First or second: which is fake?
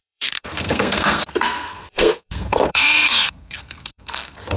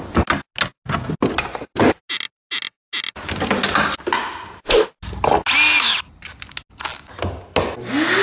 first